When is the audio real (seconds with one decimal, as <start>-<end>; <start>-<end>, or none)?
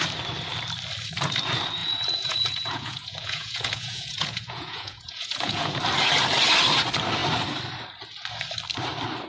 0.0-1.8; 5.8-9.3